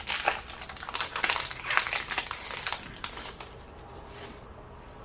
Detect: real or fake real